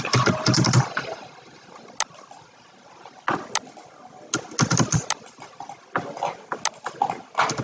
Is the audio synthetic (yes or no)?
no